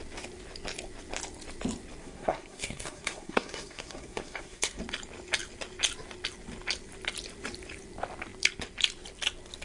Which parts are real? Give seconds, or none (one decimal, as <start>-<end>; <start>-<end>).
0.0-2.0; 4.8-9.6